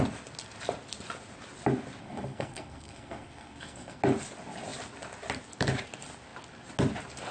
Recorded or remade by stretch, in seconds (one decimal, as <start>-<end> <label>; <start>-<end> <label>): 0.0-2.0 recorded; 2.0-4.0 remade; 4.0-7.3 recorded